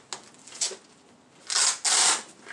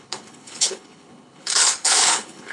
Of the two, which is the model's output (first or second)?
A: second